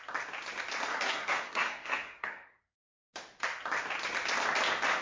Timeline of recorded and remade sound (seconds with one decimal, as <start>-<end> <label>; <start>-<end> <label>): 0.0-0.9 recorded; 0.9-2.6 remade; 2.6-5.0 recorded